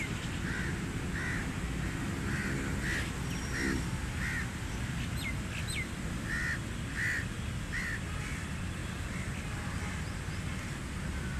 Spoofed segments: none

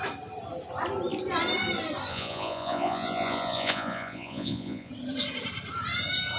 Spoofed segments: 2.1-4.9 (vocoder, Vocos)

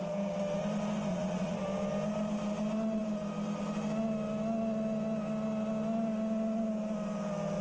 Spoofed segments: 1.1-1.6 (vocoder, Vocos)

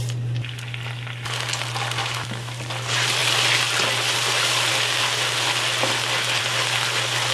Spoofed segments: 2.0-2.6 (autoencoder, DAC-VAE)